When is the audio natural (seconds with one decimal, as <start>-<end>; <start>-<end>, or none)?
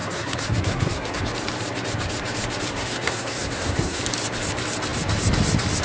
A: 1.2-2.7; 4.0-5.8